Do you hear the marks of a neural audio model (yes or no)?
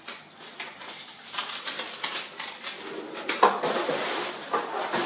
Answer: no